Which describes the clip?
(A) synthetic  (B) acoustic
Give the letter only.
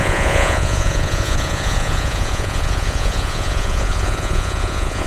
A